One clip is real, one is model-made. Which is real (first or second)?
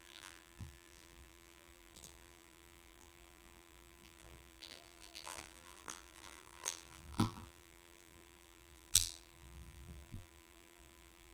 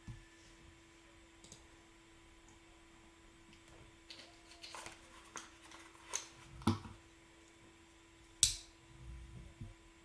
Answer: second